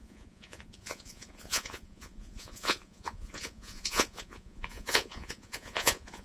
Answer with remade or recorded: remade